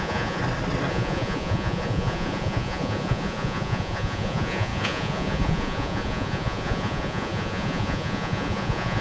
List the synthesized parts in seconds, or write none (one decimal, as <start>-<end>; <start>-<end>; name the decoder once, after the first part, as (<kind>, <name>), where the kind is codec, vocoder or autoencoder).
0.0-0.4 (vocoder, Vocos); 0.9-9.0